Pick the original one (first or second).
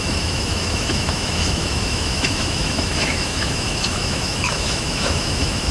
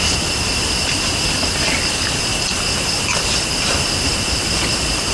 second